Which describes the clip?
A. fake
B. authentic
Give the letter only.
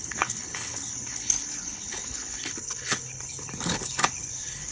A